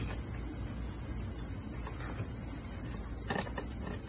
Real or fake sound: real